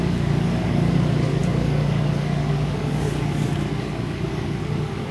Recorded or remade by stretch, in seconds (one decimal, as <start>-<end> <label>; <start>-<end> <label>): 0.0-5.1 remade